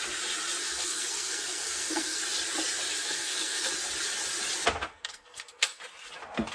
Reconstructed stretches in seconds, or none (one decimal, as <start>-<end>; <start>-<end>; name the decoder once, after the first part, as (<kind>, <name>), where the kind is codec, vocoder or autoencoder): 0.6-2.2 (codec, SNAC); 3.0-3.7; 4.9-5.8